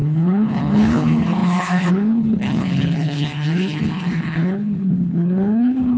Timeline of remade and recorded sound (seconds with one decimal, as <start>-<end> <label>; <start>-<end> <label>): 0.0-6.0 remade